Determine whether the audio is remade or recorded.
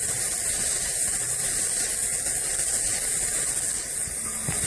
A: recorded